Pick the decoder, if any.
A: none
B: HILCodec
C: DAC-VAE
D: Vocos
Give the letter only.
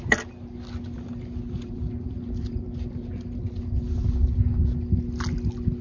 A